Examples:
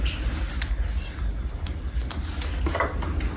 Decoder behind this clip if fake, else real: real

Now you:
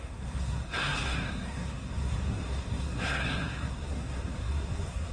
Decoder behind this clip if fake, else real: fake, codec, SNAC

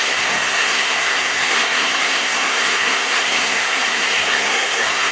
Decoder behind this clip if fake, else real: fake, codec, SNAC